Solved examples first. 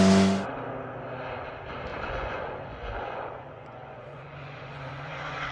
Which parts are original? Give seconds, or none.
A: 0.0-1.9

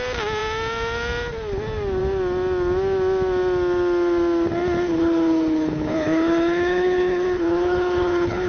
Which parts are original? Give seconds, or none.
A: 0.0-4.9

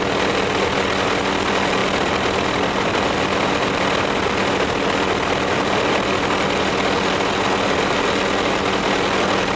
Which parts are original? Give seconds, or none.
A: 0.0-1.8; 2.8-9.6

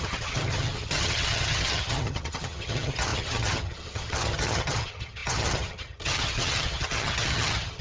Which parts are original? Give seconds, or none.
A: none